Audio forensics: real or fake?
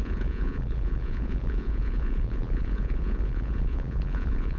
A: fake